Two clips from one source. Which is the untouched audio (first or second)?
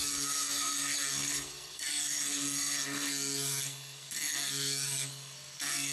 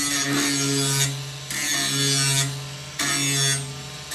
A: second